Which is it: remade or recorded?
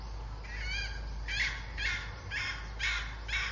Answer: recorded